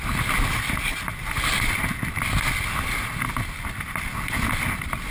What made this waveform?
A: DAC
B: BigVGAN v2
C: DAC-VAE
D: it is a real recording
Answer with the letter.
D